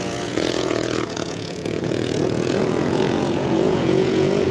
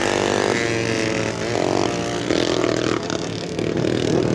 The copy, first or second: first